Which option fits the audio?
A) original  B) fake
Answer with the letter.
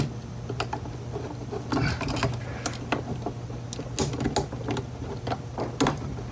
A